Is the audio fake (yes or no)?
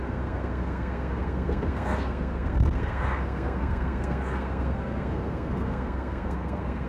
yes